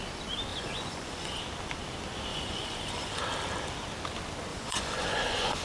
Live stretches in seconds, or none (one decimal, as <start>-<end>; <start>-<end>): 0.0-0.5; 1.4-2.3; 3.2-4.5